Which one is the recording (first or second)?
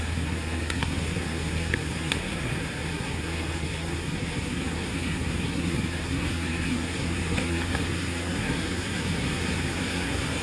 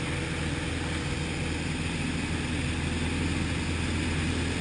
second